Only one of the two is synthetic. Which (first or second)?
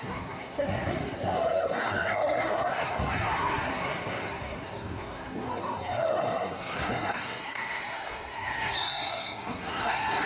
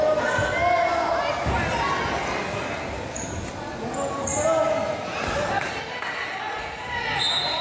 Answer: first